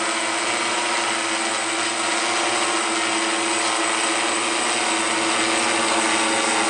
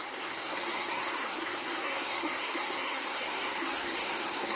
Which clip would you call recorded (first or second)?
first